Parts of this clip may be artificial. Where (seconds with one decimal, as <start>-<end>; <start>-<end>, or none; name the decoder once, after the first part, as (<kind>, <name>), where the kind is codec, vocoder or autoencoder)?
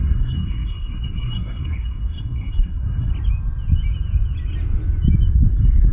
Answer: 0.0-3.1 (codec, SNAC); 5.5-5.9